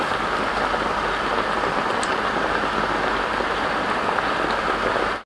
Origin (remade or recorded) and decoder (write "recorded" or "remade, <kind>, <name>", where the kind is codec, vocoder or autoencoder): recorded